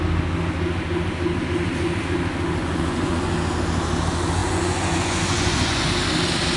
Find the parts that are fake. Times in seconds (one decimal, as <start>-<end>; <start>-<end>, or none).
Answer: 2.6-3.3; 4.4-5.9